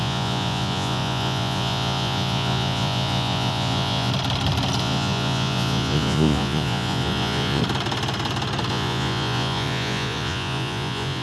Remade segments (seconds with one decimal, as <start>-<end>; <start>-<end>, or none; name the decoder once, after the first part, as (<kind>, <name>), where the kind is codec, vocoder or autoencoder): 0.0-4.1 (vocoder, Vocos); 4.8-7.6; 8.7-11.2